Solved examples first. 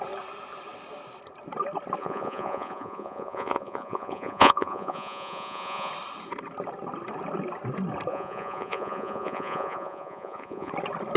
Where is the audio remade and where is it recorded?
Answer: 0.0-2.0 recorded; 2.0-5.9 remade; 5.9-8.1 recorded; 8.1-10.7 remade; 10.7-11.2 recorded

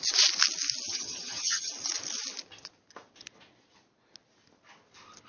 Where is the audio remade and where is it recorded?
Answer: 0.0-0.9 recorded; 0.9-1.7 remade; 1.7-5.3 recorded

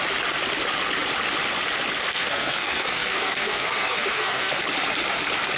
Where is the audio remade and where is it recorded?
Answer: 0.0-2.1 recorded; 2.1-4.5 remade; 4.5-5.6 recorded

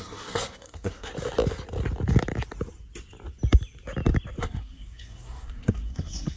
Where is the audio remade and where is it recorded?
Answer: 0.0-1.1 remade; 1.1-4.4 recorded; 4.4-6.4 remade

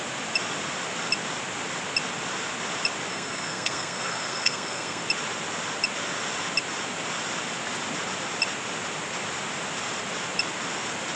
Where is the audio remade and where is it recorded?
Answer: 0.0-3.1 recorded; 3.1-5.0 remade; 5.0-11.2 recorded

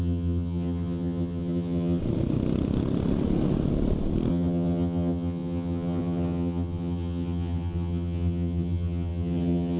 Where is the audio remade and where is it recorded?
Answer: 0.0-2.0 remade; 2.0-4.3 recorded; 4.3-9.8 remade

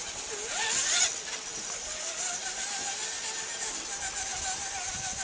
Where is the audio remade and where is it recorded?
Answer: 0.0-5.2 recorded